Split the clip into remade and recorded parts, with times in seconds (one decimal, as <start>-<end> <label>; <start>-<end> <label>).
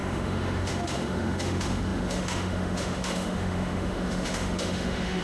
0.0-5.2 remade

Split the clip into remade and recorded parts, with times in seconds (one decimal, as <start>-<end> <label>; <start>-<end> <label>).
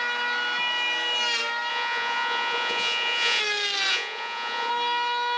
0.0-1.7 recorded; 1.7-3.4 remade; 3.4-3.9 recorded; 3.9-4.7 remade; 4.7-5.4 recorded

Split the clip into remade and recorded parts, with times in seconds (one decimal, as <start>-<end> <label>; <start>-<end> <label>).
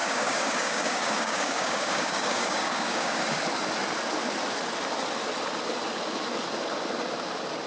0.0-3.4 remade; 3.4-7.7 recorded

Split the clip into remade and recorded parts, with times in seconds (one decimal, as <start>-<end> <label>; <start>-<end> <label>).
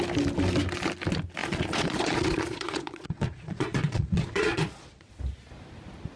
0.0-1.4 recorded; 1.4-5.1 remade; 5.1-6.2 recorded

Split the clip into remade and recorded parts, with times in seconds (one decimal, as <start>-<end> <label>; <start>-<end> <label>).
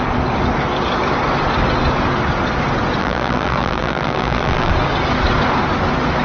0.0-3.0 recorded; 3.0-4.7 remade; 4.7-6.2 recorded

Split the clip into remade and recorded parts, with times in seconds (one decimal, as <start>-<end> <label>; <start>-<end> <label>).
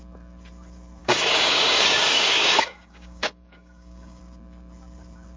0.0-1.0 recorded; 1.0-4.2 remade; 4.2-5.4 recorded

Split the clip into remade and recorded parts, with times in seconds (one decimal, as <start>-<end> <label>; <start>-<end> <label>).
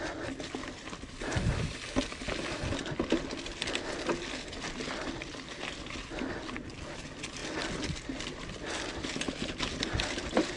0.0-10.6 recorded